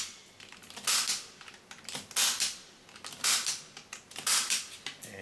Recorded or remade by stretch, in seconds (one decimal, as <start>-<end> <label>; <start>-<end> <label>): 0.0-5.2 recorded